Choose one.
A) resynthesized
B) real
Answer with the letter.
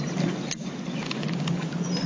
B